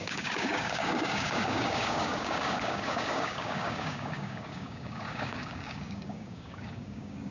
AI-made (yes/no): yes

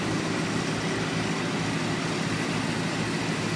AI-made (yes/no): no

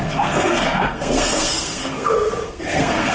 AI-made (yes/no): yes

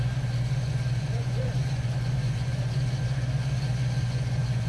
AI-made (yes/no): yes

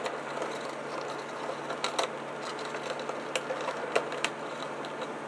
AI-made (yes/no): no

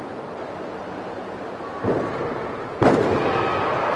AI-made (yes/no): no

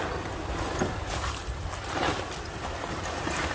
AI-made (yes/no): no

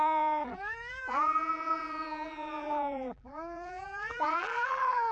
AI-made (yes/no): yes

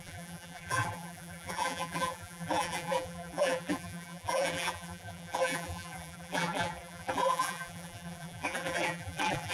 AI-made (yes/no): yes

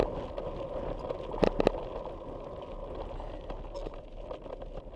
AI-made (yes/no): no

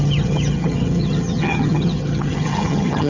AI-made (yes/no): yes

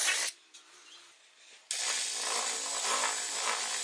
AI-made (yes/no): no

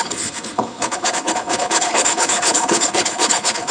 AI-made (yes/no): yes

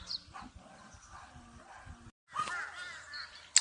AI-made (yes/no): no